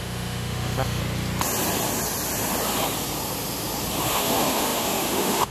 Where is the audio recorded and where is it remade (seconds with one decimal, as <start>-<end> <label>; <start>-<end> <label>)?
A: 0.0-1.0 remade; 1.0-4.0 recorded; 4.0-5.5 remade